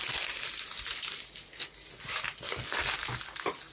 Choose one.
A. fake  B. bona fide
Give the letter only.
B